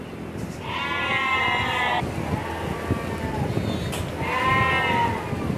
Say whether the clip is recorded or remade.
recorded